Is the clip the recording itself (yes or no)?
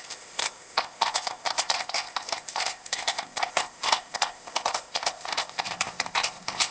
no